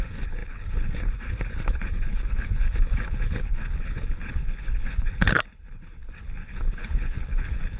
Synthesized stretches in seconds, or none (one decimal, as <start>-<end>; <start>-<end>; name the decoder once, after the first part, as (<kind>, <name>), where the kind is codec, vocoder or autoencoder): 0.0-7.8 (codec, HILCodec)